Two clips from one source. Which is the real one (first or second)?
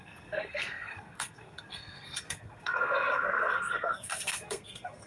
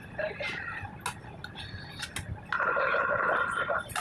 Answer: second